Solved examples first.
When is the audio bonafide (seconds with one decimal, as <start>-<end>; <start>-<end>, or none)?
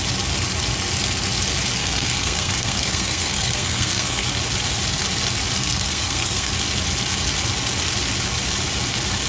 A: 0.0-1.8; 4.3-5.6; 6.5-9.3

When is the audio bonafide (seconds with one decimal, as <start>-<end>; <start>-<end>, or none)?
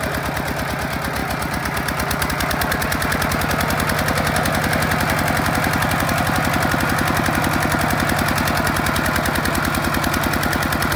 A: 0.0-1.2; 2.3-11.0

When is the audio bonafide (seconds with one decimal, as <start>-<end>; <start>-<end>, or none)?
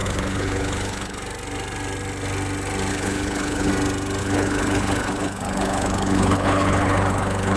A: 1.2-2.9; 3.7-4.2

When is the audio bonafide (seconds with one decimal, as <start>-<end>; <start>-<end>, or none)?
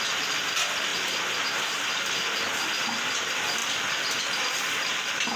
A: 0.0-0.9; 2.0-3.6; 4.2-5.4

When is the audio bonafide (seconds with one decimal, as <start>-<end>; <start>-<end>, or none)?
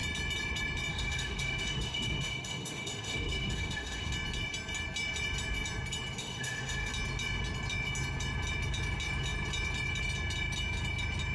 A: 0.0-0.9; 4.1-6.2; 6.9-11.3